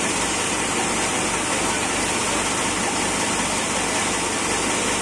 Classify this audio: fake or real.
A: real